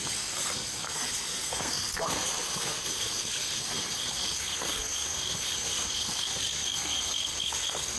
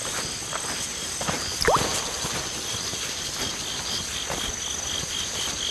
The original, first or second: second